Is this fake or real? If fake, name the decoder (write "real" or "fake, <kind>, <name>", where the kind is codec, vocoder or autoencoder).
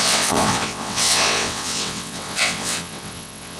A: fake, vocoder, WaveNeXt